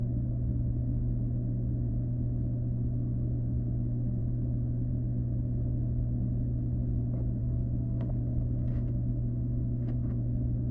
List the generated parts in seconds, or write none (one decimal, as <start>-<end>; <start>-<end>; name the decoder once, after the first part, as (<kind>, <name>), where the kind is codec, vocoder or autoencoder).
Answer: 7.4-8.1 (autoencoder, DAC-VAE); 8.7-10.2